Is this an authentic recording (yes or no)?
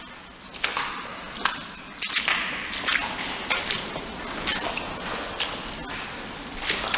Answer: yes